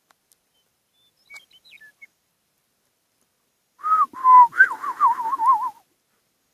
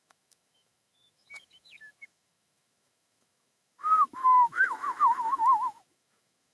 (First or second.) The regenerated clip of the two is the second